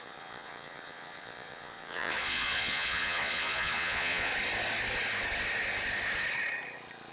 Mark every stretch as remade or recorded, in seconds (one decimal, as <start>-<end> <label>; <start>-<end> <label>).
0.0-4.3 remade; 4.3-7.1 recorded